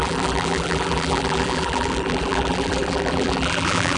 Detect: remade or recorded remade